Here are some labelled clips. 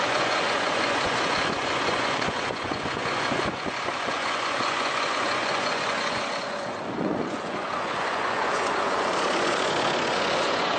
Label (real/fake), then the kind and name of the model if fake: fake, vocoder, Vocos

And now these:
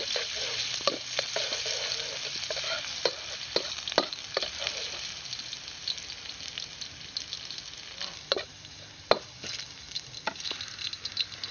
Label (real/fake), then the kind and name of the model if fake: real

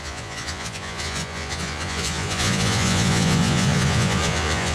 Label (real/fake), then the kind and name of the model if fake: fake, vocoder, Vocos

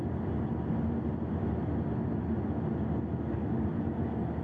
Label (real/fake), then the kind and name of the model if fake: real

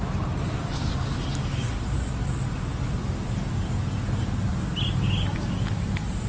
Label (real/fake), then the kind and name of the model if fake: real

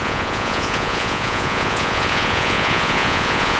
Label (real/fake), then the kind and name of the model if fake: fake, vocoder, Vocos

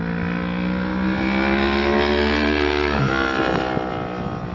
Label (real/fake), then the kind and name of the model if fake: real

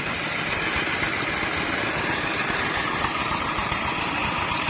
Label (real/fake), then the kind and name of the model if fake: real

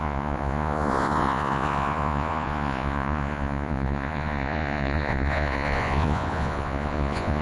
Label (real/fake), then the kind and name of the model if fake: fake, vocoder, Vocos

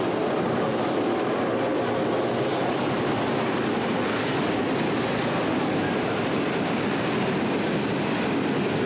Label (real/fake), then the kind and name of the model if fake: real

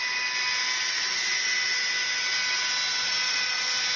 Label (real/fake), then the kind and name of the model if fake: real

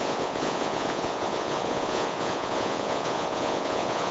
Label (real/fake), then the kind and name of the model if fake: fake, vocoder, Vocos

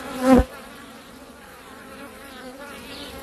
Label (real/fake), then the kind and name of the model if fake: fake, vocoder, Vocos